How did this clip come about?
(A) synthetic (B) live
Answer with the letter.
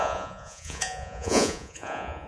A